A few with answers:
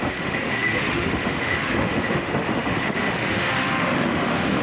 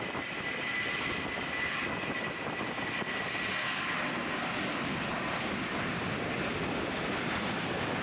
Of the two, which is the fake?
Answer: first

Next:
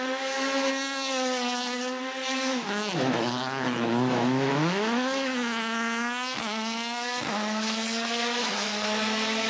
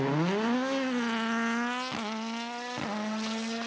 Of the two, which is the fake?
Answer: first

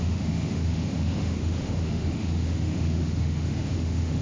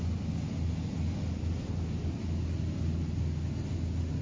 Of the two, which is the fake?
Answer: first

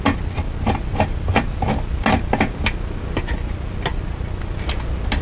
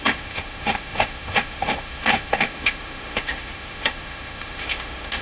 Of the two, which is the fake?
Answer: second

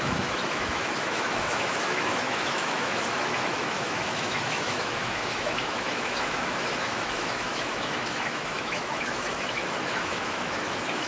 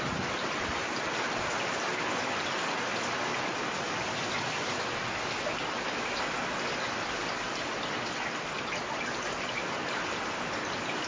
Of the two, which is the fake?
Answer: first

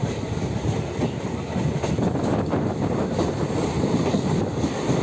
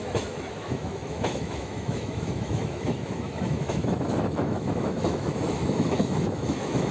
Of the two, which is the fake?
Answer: second